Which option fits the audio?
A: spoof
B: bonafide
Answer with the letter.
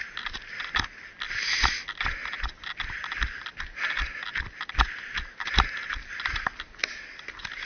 B